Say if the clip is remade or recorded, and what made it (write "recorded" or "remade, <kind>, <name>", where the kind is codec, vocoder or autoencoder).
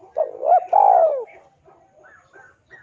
recorded